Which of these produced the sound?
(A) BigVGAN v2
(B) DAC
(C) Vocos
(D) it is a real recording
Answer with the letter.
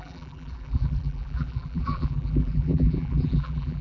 A